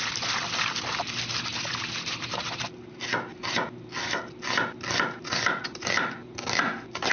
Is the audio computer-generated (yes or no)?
no